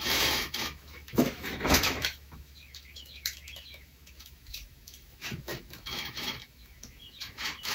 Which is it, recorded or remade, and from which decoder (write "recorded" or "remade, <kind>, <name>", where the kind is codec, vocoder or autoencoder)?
remade, autoencoder, DAC-VAE